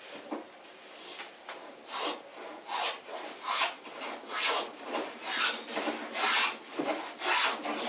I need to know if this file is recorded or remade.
recorded